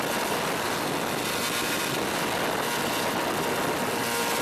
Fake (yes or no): no